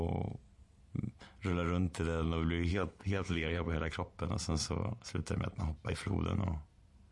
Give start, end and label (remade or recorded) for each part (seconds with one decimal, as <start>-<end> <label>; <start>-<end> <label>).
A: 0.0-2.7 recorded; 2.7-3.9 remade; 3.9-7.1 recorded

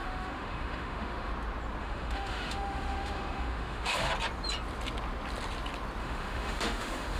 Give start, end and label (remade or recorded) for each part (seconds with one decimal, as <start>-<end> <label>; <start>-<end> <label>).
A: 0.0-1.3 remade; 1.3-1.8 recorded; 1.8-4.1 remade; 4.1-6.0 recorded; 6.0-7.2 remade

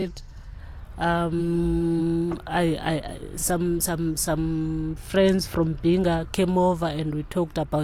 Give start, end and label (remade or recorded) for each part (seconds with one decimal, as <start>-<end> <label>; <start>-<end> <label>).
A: 0.0-0.6 remade; 0.6-1.4 recorded; 1.4-2.0 remade; 2.0-7.8 recorded